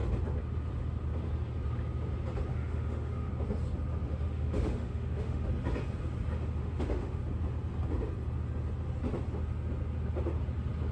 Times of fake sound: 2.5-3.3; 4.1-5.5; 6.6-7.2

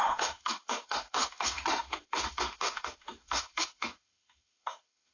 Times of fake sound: 0.0-5.1

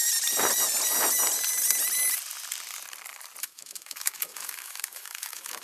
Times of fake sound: 3.4-5.6

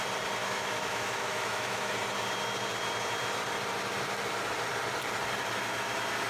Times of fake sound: 0.4-1.9